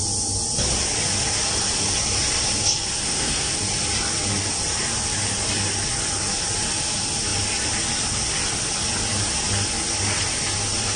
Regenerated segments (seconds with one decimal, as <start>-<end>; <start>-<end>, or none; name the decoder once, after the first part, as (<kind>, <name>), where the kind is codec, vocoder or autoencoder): 3.0-3.6 (codec, SNAC)